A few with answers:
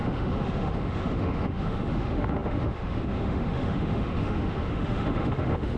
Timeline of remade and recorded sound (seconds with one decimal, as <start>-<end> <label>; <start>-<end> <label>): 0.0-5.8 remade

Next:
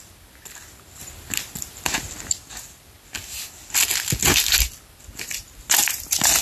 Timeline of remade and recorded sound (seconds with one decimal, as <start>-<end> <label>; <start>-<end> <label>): 0.0-6.4 recorded

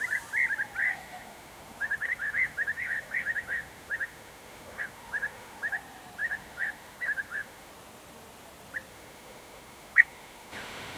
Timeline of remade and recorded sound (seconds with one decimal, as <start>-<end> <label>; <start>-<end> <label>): 0.0-0.8 recorded; 0.8-5.8 remade; 5.8-6.2 recorded; 6.2-7.7 remade; 7.7-8.9 recorded; 8.9-11.0 remade